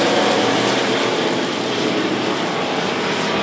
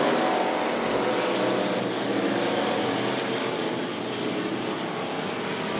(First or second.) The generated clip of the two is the first